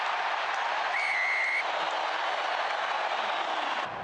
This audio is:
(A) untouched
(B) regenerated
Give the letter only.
A